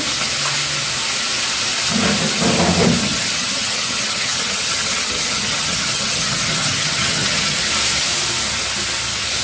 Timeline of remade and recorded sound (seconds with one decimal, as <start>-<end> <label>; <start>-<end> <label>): 0.0-3.0 recorded; 3.0-7.6 remade; 7.6-9.4 recorded